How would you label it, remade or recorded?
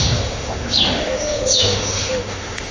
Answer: remade